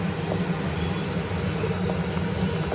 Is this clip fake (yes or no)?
no